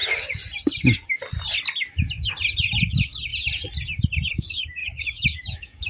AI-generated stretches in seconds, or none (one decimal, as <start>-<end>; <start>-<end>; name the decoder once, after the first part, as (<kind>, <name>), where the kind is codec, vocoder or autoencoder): 2.8-3.3 (autoencoder, DAC-VAE); 4.3-5.9

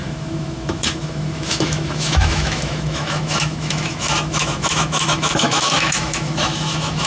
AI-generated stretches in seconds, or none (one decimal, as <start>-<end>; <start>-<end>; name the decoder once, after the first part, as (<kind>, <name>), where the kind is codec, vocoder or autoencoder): 0.0-7.1 (autoencoder, DAC-VAE)

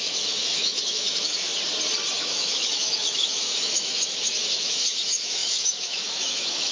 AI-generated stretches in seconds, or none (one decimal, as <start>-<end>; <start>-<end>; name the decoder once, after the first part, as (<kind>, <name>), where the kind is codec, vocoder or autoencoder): 0.0-1.5 (autoencoder, DAC-VAE); 2.2-6.7

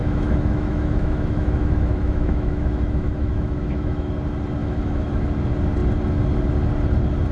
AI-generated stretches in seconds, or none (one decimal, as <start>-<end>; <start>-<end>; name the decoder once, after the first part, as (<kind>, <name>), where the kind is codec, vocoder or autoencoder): 0.0-4.1 (autoencoder, DAC-VAE); 4.6-5.3

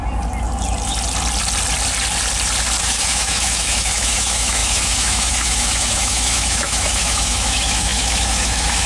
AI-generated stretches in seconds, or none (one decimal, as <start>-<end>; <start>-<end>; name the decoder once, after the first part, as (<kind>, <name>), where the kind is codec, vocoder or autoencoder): 2.8-8.9 (autoencoder, DAC-VAE)

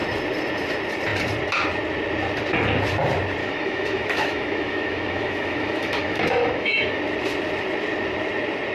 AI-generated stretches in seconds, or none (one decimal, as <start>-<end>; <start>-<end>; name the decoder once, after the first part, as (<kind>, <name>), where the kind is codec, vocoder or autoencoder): 3.4-7.0 (autoencoder, DAC-VAE)

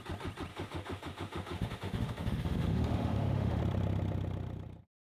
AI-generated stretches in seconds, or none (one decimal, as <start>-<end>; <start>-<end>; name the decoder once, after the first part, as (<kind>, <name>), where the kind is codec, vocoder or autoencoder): 0.5-3.6 (autoencoder, DAC-VAE)

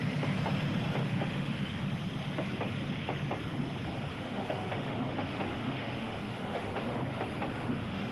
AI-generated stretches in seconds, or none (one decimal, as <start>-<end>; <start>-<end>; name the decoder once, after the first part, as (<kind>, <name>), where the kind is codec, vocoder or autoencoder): 1.0-1.9 (autoencoder, DAC-VAE); 4.1-7.0; 7.5-8.1